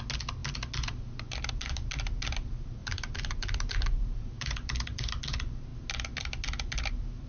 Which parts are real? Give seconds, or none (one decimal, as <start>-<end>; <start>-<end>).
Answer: 0.0-2.8; 5.1-7.3